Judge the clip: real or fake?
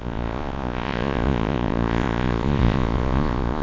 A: fake